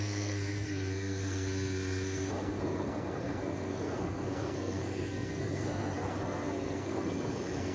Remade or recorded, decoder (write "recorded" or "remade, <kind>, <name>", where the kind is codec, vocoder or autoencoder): remade, codec, SNAC